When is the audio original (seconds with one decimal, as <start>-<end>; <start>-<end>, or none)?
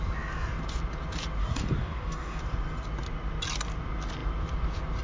0.0-1.4; 2.4-5.0